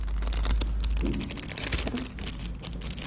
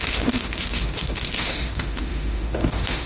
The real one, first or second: first